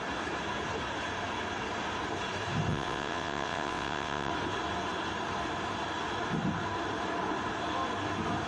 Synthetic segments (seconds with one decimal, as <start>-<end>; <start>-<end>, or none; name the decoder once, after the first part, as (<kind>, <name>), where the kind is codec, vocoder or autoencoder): 2.7-4.3 (vocoder, WaveNeXt)